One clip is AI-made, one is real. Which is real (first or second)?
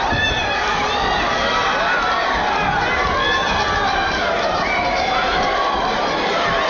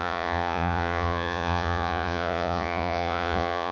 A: first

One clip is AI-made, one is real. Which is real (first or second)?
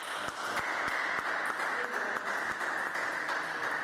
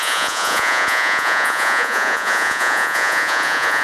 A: first